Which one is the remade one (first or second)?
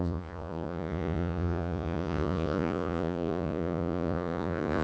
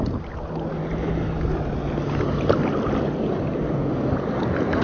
first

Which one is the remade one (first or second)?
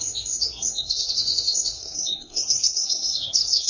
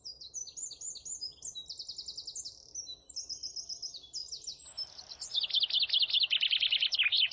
first